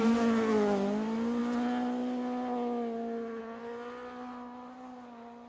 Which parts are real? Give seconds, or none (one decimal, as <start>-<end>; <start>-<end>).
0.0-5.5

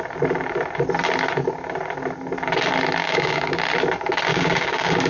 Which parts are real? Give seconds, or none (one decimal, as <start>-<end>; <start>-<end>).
0.0-3.0; 3.6-4.3

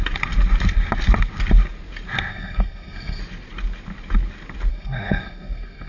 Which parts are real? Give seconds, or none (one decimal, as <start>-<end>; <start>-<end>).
0.0-2.3; 3.2-4.7

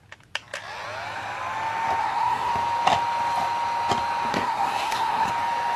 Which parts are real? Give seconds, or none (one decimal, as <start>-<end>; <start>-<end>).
0.0-2.0; 2.5-4.3; 5.3-5.8

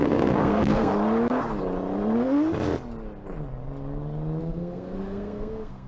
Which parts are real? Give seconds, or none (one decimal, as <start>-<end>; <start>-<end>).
0.9-4.4

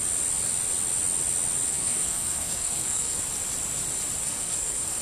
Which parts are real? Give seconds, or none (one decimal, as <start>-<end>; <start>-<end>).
0.0-1.7; 3.2-4.2